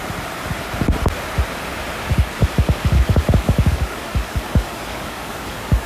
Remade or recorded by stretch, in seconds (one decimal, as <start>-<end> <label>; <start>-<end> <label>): 0.0-2.1 recorded; 2.1-5.9 remade